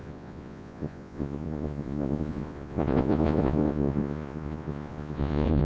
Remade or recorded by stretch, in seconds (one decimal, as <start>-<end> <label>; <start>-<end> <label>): 0.0-5.6 remade